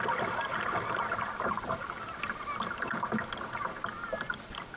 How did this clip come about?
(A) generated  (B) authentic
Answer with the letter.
B